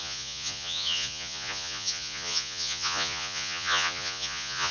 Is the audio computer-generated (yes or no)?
yes